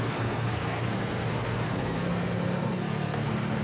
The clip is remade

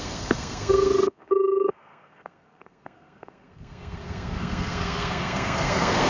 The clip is remade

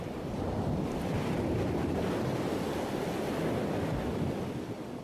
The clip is recorded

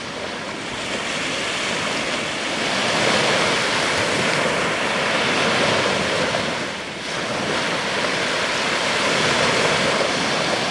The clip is recorded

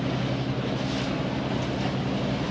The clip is recorded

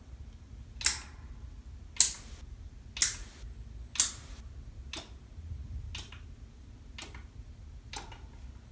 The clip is recorded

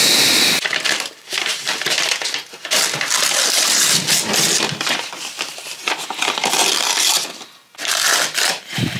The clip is remade